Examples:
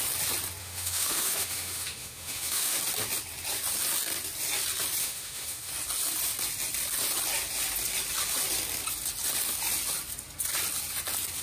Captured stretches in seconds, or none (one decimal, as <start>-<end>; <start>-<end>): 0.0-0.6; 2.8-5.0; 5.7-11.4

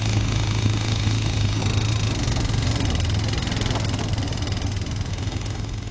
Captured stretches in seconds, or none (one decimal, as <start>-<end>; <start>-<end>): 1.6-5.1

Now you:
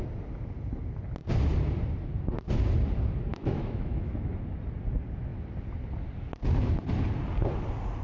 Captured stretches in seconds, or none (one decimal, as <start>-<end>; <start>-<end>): 0.0-3.3; 4.3-8.0